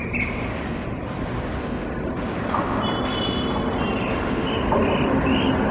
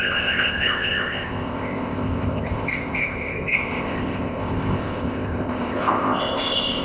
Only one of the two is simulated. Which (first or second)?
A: second